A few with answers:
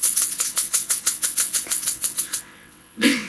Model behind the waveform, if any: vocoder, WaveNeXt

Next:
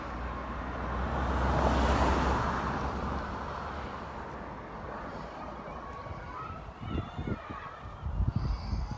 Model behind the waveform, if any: none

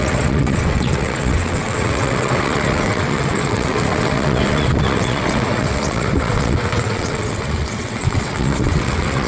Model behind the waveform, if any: vocoder, WaveNeXt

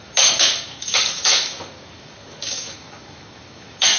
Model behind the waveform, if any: codec, DAC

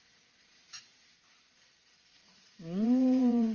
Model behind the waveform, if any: vocoder, Vocos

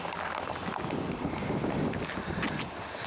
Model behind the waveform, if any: none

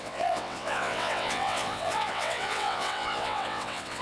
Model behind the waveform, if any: vocoder, WaveNeXt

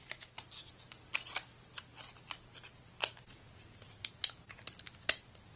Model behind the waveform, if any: none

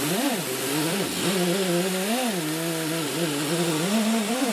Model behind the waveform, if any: none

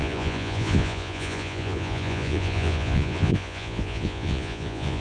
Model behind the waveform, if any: vocoder, Vocos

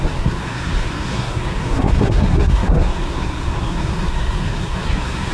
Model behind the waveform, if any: codec, SNAC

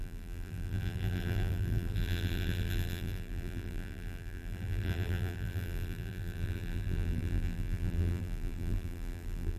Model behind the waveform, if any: vocoder, BigVGAN v2